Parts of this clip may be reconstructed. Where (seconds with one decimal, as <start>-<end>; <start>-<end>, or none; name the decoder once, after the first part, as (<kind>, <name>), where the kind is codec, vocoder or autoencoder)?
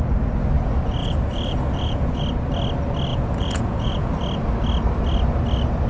1.0-2.2 (vocoder, Vocos); 3.1-4.1